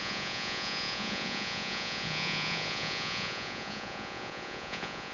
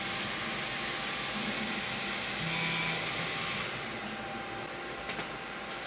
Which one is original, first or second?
second